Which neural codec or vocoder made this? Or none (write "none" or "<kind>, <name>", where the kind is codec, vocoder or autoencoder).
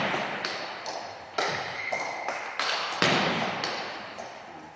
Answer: vocoder, BigVGAN v2